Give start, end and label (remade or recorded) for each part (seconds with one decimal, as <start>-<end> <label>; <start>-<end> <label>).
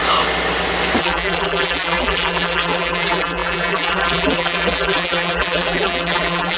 0.0-1.0 recorded; 1.0-6.6 remade